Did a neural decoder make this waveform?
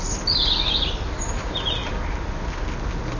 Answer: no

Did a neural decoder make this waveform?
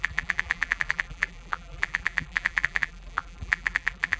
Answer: yes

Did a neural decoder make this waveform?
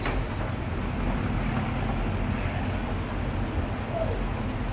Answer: no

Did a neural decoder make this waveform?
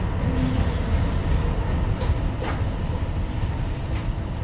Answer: no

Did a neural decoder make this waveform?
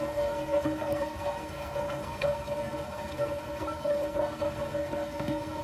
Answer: yes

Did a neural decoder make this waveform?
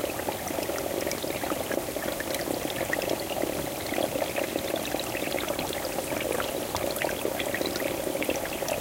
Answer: no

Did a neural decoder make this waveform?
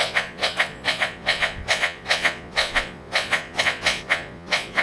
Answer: yes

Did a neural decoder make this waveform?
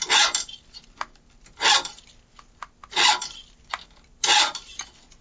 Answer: no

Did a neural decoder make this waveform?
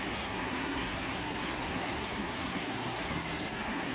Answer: yes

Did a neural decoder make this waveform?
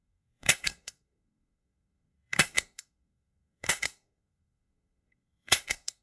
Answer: yes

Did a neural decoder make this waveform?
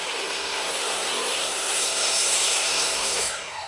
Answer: yes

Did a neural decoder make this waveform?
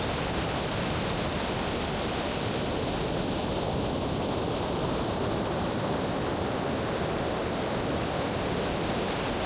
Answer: no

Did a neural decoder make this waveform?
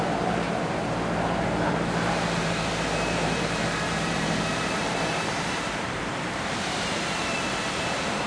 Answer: yes